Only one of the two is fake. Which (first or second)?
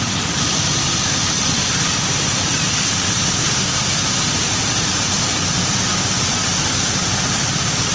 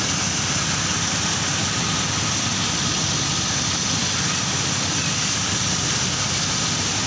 first